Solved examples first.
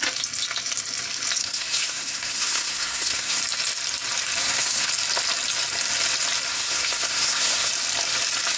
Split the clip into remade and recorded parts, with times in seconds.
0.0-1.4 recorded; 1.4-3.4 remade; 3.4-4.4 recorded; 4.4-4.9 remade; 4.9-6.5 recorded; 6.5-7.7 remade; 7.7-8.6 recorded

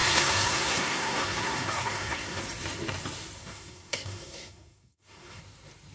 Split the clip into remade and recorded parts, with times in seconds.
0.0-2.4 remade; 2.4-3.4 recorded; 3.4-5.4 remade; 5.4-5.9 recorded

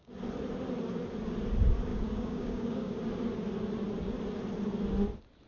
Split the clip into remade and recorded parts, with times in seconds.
0.0-1.9 recorded; 1.9-3.0 remade; 3.0-5.5 recorded